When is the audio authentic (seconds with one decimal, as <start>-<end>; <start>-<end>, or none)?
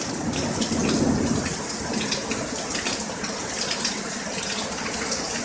0.0-5.4